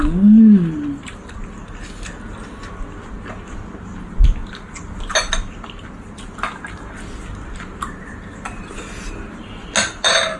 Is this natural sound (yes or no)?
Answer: yes